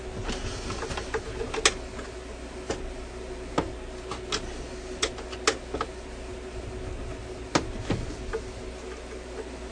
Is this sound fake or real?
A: real